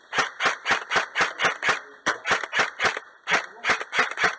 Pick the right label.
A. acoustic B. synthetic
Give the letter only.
A